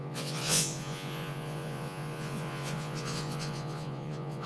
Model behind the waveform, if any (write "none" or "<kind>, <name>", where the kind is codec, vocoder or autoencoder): vocoder, Vocos